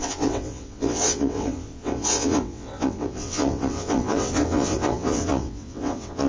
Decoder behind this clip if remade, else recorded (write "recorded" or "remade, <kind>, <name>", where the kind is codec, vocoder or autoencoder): remade, vocoder, WaveNeXt